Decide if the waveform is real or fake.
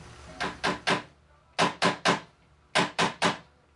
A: real